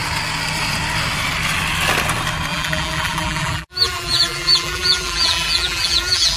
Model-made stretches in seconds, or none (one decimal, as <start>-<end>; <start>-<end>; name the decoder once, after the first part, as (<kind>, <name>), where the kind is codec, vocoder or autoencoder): 2.5-6.4 (vocoder, BigVGAN v2)